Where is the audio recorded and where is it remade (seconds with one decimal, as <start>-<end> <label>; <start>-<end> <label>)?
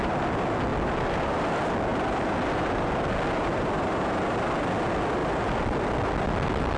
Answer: 0.0-0.7 recorded; 0.7-1.5 remade; 1.5-1.9 recorded; 1.9-4.8 remade; 4.8-5.2 recorded; 5.2-5.9 remade; 5.9-6.8 recorded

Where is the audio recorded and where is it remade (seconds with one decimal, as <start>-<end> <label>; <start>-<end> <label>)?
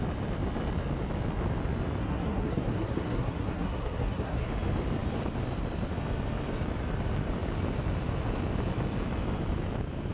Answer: 0.0-2.0 recorded; 2.0-4.5 remade; 4.5-10.1 recorded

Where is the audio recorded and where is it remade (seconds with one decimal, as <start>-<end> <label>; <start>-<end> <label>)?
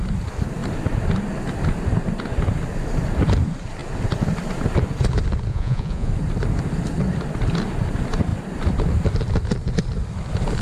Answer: 0.0-5.5 recorded; 5.5-6.1 remade; 6.1-10.6 recorded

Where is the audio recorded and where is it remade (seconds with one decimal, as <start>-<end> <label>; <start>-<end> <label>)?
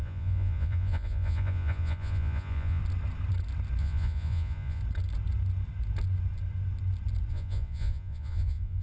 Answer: 0.0-2.8 remade; 2.8-3.8 recorded; 3.8-4.8 remade; 4.8-7.3 recorded; 7.3-8.8 remade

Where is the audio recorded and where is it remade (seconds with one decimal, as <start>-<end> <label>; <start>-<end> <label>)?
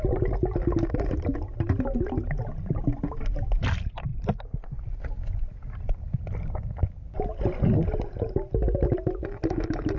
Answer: 0.0-10.0 recorded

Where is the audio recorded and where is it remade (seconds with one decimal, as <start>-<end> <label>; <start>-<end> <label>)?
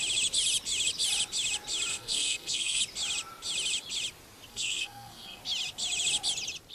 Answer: 0.0-1.9 recorded; 1.9-2.8 remade; 2.8-4.5 recorded; 4.5-5.4 remade; 5.4-6.7 recorded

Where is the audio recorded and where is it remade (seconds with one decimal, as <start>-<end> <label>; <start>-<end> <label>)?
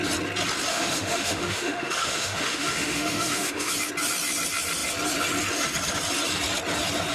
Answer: 0.0-0.7 recorded; 0.7-3.7 remade; 3.7-7.1 recorded